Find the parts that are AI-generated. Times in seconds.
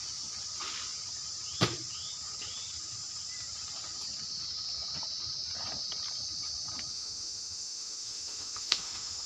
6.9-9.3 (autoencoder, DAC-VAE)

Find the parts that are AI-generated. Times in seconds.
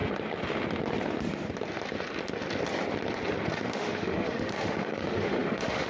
3.5-5.9 (autoencoder, DAC-VAE)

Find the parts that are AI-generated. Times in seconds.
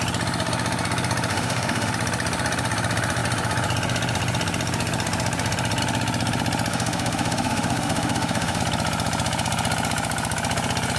1.3-1.9 (autoencoder, DAC-VAE); 6.7-8.6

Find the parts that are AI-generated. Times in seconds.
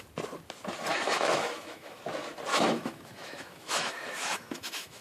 0.9-2.0 (autoencoder, DAC-VAE); 2.5-5.0